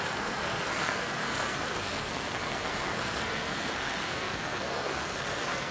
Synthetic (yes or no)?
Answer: yes